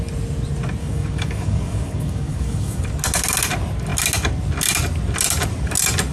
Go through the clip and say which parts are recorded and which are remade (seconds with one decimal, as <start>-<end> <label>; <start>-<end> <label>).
0.0-0.8 recorded; 0.8-2.8 remade; 2.8-6.1 recorded